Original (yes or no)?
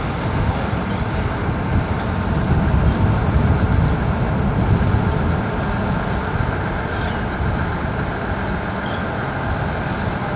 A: yes